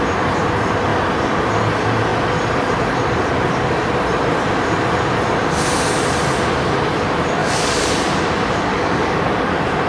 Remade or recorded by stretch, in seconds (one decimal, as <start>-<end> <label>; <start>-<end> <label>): 0.0-7.4 recorded; 7.4-7.9 remade; 7.9-8.7 recorded; 8.7-9.5 remade; 9.5-9.9 recorded